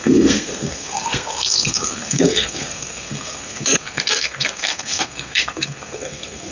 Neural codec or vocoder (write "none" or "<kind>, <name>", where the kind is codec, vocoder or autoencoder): codec, SNAC